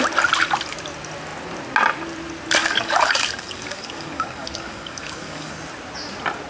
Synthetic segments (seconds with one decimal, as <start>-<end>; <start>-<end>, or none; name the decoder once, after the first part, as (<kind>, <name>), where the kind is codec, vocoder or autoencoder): 2.6-5.5 (codec, DAC)